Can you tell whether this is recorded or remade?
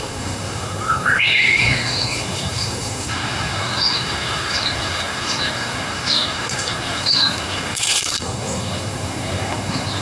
remade